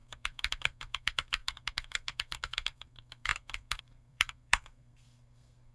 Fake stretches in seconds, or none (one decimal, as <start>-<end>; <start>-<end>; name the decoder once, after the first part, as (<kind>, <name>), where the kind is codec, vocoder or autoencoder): 0.0-5.7 (codec, SNAC)